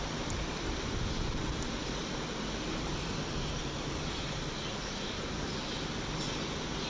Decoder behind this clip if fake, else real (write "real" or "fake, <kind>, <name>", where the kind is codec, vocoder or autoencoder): real